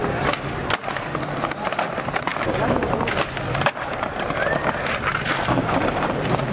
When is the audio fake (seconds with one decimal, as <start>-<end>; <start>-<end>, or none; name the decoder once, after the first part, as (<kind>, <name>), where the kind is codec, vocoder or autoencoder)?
1.9-2.3 (vocoder, BigVGAN v2); 3.8-6.5

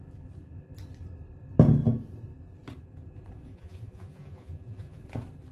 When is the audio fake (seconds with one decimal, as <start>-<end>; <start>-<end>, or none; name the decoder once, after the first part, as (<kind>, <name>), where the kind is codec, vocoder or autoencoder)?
3.5-5.0 (vocoder, Vocos)

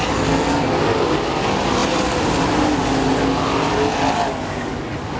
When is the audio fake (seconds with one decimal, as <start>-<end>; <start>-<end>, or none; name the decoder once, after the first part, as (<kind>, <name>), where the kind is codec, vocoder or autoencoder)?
none